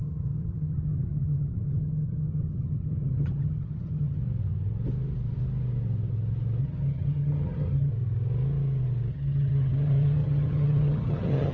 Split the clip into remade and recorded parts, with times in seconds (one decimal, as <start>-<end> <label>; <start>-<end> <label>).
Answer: 0.0-4.2 remade; 4.2-6.6 recorded; 6.6-7.9 remade; 7.9-9.1 recorded; 9.1-11.5 remade